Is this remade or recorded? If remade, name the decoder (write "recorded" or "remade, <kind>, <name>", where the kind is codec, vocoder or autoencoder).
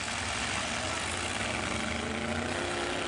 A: recorded